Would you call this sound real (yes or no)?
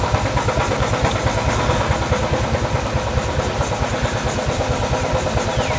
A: yes